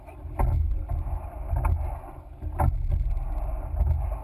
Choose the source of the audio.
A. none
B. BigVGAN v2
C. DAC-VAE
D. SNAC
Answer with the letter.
A